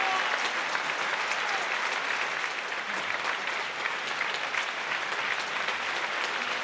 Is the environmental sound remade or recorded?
recorded